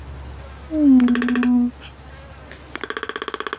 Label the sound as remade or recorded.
recorded